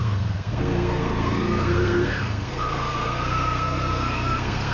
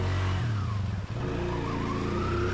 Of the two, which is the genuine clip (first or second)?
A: second